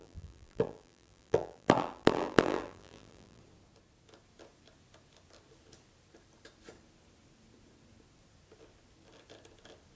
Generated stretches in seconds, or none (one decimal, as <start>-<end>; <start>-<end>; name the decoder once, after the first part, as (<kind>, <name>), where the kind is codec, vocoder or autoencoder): 0.0-3.4 (vocoder, BigVGAN v2)